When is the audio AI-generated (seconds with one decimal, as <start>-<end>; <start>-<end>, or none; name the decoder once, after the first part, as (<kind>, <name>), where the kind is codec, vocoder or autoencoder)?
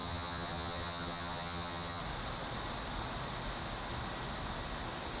0.0-2.0 (vocoder, HiFi-GAN)